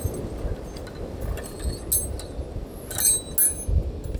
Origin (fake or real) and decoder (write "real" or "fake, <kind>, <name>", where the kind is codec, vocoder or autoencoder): real